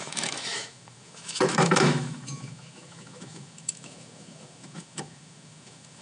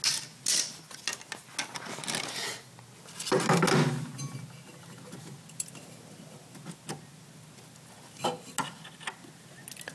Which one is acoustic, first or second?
second